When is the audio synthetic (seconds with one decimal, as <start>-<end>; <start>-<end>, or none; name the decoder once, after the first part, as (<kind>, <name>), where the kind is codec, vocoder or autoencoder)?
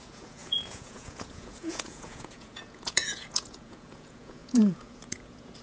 0.0-5.6 (vocoder, Vocos)